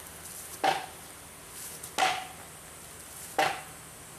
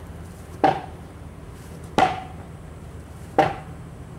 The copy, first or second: second